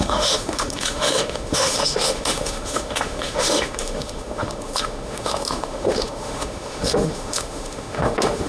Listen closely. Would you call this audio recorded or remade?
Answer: remade